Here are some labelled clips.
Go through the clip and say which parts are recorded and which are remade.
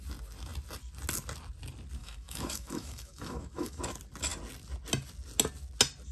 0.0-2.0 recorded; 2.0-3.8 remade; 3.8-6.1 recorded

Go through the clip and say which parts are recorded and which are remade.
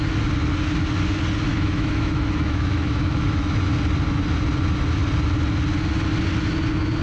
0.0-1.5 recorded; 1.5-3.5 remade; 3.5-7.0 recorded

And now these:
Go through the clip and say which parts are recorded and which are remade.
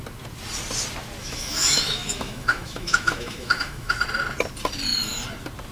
0.0-1.2 recorded; 1.2-3.9 remade; 3.9-5.7 recorded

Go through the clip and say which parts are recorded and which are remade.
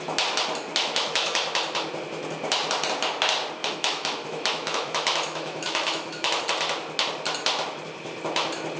0.0-0.8 recorded; 0.8-1.4 remade; 1.4-3.6 recorded; 3.6-6.4 remade; 6.4-8.8 recorded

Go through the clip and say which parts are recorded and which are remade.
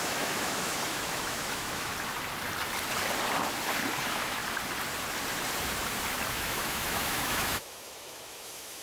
0.0-1.9 remade; 1.9-4.0 recorded; 4.0-4.4 remade; 4.4-6.3 recorded; 6.3-8.8 remade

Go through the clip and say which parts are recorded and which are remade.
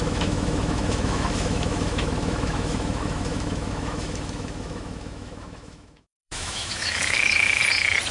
0.0-7.6 remade; 7.6-8.1 recorded